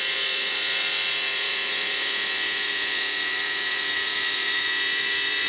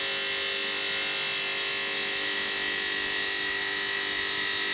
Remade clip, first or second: first